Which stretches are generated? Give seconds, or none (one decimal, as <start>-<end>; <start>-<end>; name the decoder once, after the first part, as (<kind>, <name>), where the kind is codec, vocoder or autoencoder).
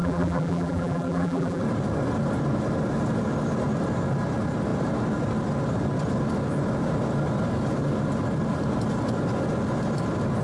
0.0-1.6 (vocoder, BigVGAN v2)